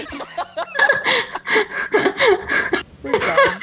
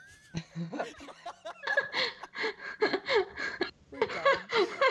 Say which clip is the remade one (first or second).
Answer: second